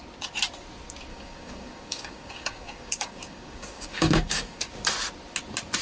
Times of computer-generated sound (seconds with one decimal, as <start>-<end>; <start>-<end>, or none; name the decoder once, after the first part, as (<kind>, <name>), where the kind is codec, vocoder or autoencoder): 1.1-4.6 (codec, DAC)